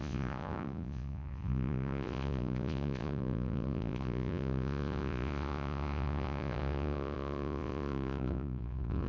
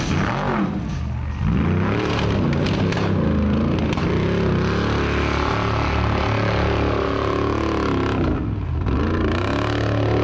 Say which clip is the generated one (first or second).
first